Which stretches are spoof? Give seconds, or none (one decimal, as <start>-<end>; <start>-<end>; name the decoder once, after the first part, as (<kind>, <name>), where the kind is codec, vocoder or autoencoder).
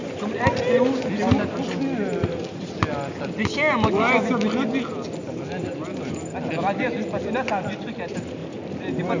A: none